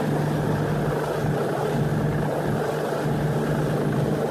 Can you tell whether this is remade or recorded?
recorded